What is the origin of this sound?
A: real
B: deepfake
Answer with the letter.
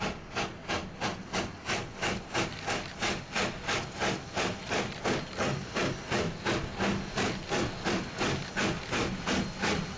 A